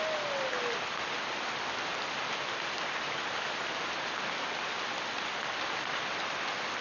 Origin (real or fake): real